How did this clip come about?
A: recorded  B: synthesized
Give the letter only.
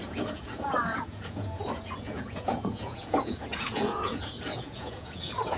B